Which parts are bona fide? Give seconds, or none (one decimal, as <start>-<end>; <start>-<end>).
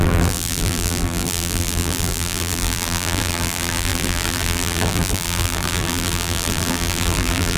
none